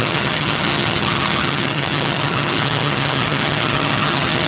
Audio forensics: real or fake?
fake